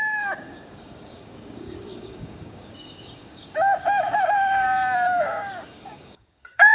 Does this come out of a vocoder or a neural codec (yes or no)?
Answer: yes